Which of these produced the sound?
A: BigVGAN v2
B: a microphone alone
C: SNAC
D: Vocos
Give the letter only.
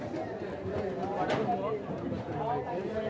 B